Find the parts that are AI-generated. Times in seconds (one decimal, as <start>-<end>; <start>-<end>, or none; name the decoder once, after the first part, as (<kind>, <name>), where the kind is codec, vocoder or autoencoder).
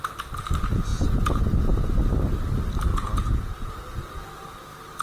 0.9-1.4 (vocoder, Vocos); 2.9-3.7